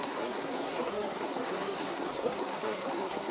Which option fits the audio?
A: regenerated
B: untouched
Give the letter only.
A